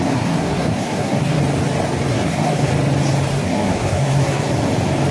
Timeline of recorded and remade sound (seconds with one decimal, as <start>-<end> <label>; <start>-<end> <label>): 0.0-1.4 remade; 1.4-2.1 recorded; 2.1-2.7 remade; 2.7-3.3 recorded; 3.3-4.5 remade; 4.5-5.1 recorded

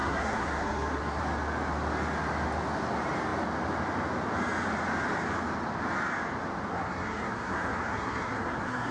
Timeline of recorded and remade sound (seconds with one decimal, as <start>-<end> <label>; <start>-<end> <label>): 0.0-1.2 remade; 1.2-6.7 recorded; 6.7-8.9 remade